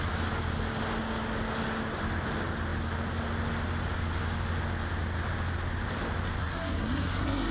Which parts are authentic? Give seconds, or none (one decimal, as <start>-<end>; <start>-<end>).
0.0-6.4